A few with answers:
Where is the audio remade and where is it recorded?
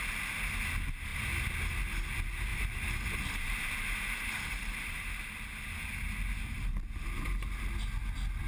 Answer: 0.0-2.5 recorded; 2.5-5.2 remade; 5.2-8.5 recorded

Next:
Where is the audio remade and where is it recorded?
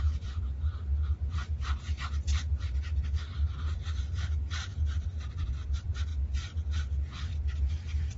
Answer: 0.0-0.7 remade; 0.7-1.3 recorded; 1.3-8.2 remade